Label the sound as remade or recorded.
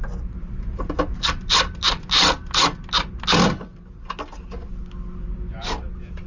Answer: recorded